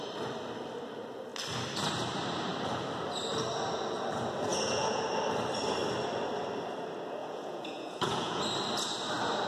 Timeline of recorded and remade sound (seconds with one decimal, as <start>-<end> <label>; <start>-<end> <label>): 0.0-4.5 recorded; 4.5-5.0 remade; 5.0-7.2 recorded; 7.2-8.4 remade; 8.4-9.5 recorded